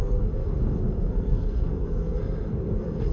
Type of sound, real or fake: fake